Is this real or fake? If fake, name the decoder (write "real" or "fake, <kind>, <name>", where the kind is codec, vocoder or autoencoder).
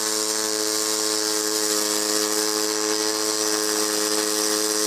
real